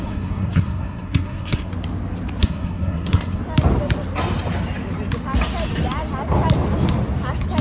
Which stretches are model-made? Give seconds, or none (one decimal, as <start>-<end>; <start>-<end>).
0.0-1.7; 2.4-3.4